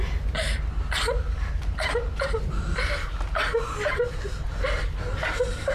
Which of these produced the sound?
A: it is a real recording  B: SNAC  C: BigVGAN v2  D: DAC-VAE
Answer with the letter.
A